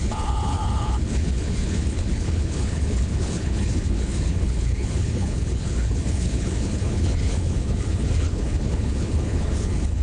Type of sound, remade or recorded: remade